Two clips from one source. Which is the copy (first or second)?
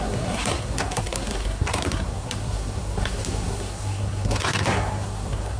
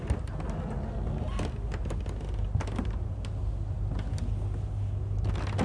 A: first